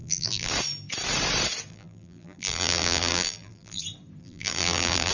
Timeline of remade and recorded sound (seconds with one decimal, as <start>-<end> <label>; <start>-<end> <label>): 0.0-0.5 remade; 0.5-1.7 recorded; 1.7-3.8 remade; 3.8-4.2 recorded; 4.2-5.1 remade